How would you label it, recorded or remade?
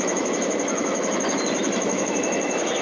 remade